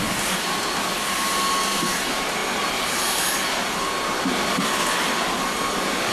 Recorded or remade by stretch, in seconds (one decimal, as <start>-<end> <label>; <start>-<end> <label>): 0.0-6.1 recorded